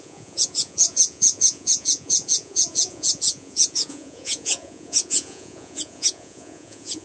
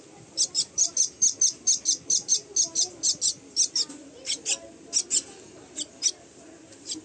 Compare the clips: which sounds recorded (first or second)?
second